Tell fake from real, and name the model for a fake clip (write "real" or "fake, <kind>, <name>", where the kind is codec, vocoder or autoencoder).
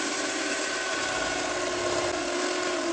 real